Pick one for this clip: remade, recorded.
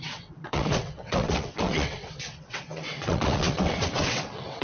remade